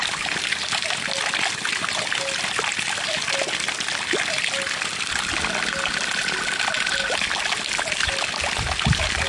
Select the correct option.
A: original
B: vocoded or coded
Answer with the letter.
A